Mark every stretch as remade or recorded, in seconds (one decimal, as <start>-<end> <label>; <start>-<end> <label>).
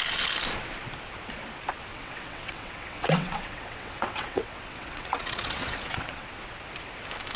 0.0-1.9 recorded; 1.9-6.3 remade; 6.3-7.4 recorded